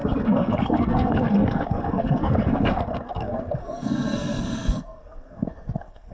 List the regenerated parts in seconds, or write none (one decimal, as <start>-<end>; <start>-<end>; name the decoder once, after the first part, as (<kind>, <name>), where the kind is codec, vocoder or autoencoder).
0.0-6.1 (codec, SNAC)